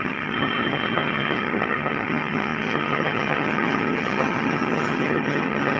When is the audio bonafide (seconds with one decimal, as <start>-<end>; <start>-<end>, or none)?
none